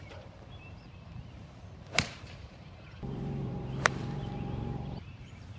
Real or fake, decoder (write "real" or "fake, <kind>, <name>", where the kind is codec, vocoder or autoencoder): fake, vocoder, BigVGAN v2